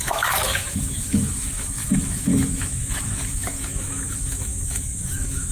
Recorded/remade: remade